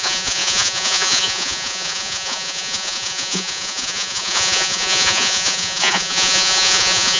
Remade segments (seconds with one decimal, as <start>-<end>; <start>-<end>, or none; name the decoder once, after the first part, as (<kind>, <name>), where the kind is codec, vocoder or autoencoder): 0.0-7.2 (vocoder, Vocos)